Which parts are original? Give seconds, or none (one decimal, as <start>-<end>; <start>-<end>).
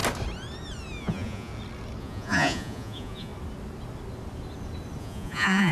0.0-1.0; 1.5-2.0; 3.3-5.0